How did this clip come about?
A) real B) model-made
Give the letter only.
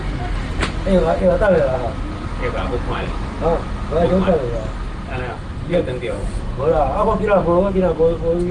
A